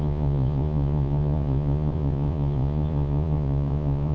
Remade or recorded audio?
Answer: remade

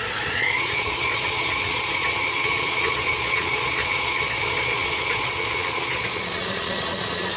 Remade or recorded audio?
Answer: remade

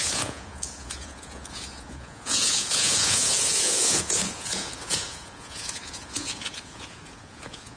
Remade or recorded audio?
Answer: remade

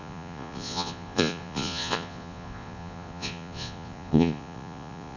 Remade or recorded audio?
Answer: remade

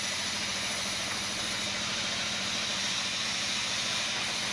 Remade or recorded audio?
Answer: remade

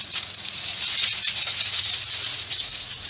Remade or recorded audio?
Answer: remade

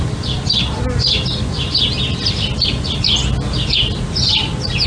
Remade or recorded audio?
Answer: recorded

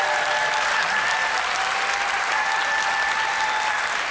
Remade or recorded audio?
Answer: recorded